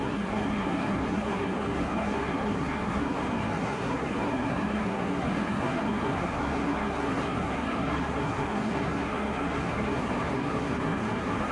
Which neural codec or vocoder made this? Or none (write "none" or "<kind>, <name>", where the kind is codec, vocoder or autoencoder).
codec, SNAC